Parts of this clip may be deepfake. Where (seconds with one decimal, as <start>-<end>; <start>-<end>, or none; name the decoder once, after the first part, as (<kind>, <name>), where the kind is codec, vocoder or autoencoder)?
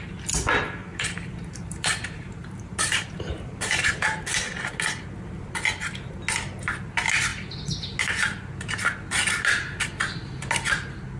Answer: 0.8-3.9 (vocoder, BigVGAN v2)